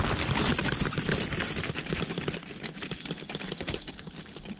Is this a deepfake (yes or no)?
no